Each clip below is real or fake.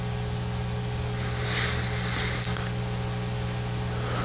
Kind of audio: real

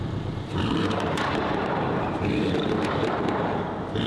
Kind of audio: fake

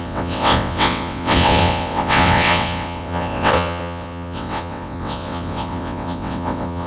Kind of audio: fake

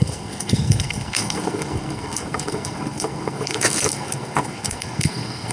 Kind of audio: fake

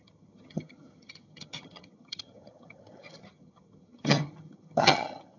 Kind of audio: fake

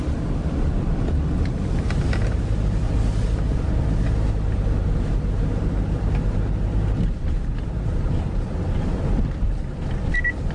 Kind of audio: fake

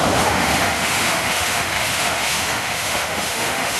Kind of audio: fake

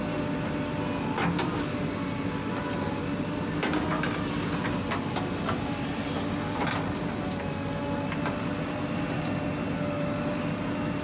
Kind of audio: real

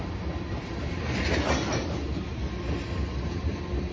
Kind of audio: real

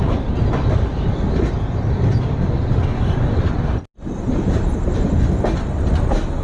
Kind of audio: real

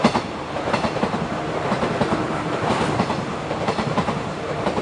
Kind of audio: fake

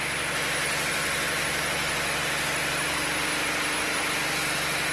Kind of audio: real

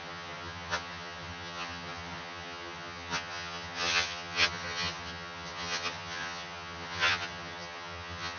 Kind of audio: fake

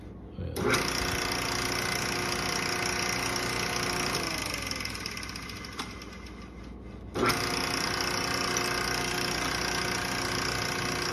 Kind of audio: real